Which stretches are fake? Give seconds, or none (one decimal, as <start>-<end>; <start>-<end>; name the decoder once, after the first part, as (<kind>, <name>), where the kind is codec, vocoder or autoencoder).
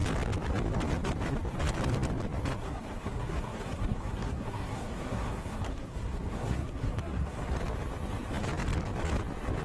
2.6-7.5 (codec, SNAC)